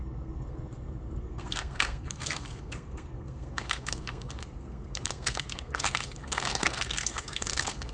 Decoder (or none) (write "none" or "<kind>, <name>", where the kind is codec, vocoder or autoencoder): codec, SNAC